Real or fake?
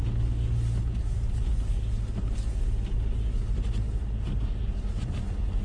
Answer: real